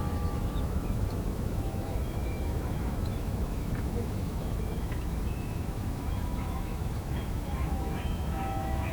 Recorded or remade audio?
remade